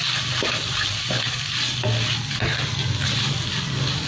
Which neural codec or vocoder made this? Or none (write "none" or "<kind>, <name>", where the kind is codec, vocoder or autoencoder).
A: none